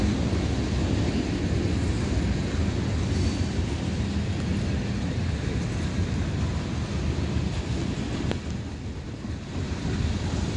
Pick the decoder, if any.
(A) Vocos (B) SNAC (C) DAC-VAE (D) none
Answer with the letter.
D